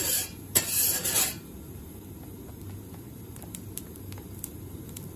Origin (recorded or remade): recorded